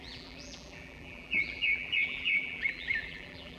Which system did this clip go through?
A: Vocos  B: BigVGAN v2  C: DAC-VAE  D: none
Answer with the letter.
B